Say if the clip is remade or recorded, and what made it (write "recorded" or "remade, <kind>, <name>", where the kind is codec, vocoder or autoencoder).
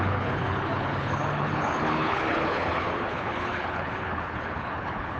remade, codec, HILCodec